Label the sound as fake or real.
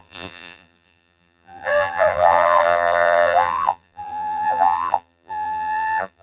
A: fake